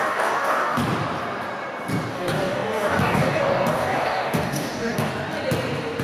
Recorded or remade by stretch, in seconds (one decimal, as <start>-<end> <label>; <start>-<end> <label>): 0.0-0.8 remade; 0.8-2.1 recorded; 2.1-5.1 remade; 5.1-6.0 recorded